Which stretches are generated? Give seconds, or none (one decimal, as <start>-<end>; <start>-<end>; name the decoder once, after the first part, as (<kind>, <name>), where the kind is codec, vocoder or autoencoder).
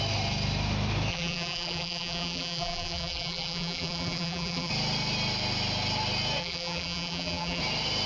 1.1-4.7 (vocoder, BigVGAN v2); 6.4-7.6